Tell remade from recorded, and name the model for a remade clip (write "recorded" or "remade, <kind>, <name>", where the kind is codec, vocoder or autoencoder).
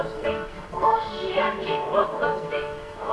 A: remade, codec, SNAC